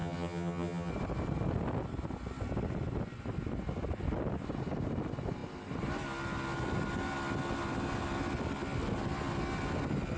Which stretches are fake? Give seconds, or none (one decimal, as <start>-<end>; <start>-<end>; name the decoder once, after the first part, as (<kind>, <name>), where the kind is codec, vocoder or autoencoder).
0.0-0.9 (vocoder, HiFi-GAN)